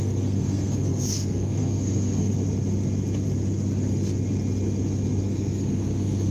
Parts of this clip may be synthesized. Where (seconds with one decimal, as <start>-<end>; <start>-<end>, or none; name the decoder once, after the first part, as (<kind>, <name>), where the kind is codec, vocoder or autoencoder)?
0.0-2.3 (codec, SNAC); 5.2-6.3